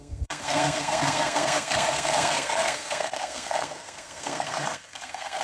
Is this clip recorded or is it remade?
remade